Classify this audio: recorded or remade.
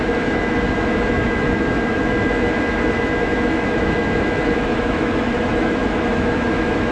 remade